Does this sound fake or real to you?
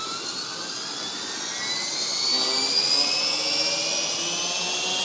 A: real